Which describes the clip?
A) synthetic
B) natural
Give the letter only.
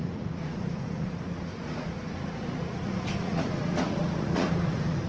A